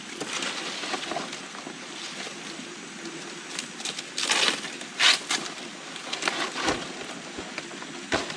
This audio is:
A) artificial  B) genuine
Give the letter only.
B